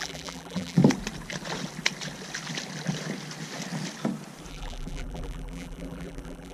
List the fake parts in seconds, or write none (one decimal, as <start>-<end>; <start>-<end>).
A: 0.0-0.8; 4.5-6.5